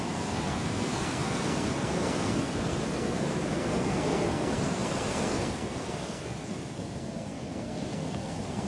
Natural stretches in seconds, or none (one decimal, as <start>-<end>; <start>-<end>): none